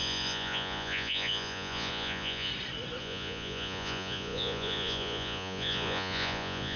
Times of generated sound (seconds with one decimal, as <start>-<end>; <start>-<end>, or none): 0.0-2.5; 3.0-6.8